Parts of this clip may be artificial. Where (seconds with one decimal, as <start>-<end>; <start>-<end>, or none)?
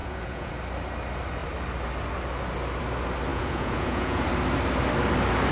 0.0-0.5; 3.3-4.2